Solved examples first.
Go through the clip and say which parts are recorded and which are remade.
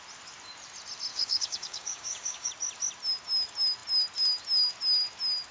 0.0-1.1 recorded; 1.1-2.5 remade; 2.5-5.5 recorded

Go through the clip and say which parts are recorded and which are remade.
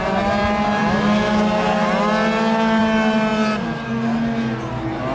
0.0-5.1 recorded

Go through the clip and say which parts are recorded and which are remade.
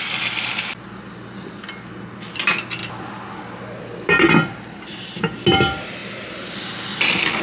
0.0-7.4 recorded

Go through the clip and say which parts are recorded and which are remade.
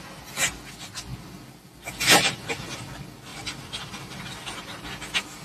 0.0-3.3 recorded; 3.3-4.2 remade; 4.2-5.4 recorded